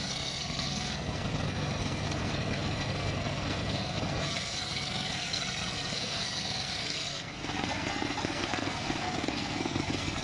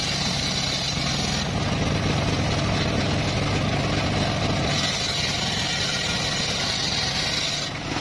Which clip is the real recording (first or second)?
second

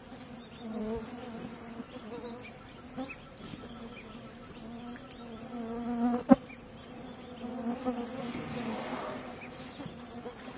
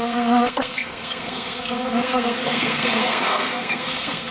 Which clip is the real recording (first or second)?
first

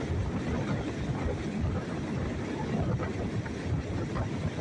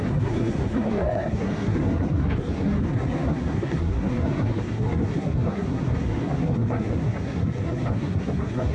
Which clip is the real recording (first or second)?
first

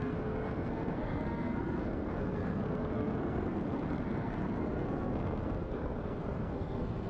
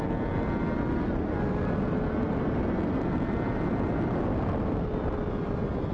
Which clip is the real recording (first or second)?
second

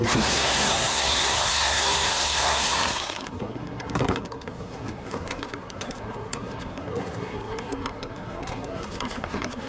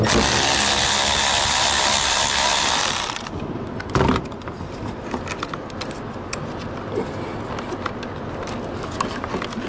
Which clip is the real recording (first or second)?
second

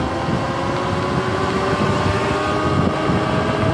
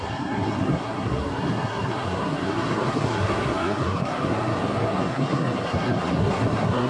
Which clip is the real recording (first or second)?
first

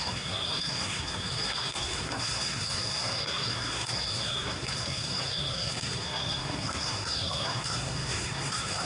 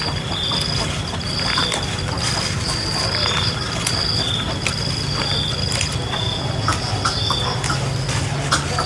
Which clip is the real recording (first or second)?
second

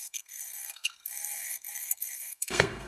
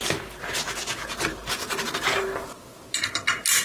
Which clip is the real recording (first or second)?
second